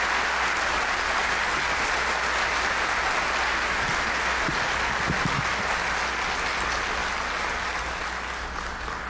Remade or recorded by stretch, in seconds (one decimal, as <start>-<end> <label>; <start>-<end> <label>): 0.0-9.1 recorded